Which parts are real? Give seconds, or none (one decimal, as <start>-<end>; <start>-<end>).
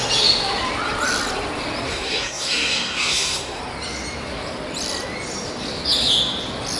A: 0.0-1.9; 3.6-6.8